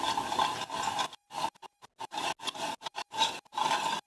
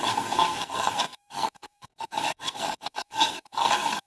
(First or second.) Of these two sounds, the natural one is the first